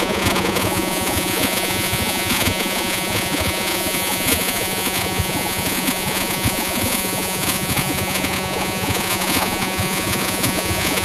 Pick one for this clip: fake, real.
fake